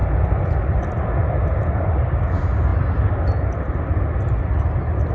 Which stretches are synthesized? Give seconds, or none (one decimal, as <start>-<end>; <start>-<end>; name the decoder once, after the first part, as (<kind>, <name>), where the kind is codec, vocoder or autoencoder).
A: none